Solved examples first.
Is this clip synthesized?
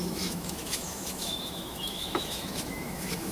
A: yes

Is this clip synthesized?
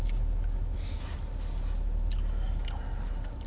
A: no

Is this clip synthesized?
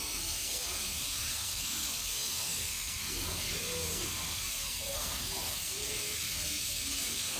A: yes